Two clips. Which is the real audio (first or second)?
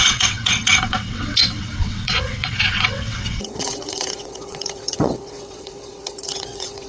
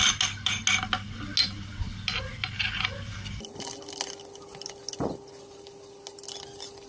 second